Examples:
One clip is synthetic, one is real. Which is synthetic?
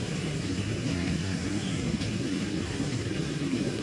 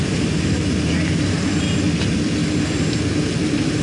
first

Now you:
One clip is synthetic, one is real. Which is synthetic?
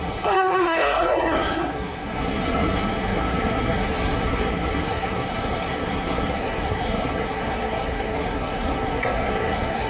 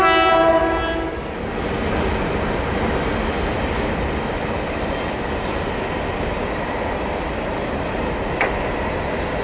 first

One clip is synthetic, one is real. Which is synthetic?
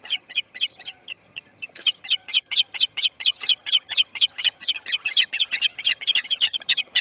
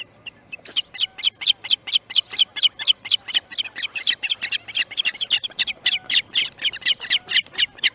first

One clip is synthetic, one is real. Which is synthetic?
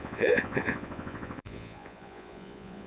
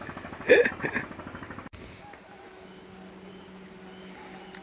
first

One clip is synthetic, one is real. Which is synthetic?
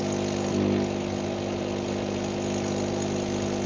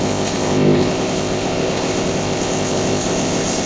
second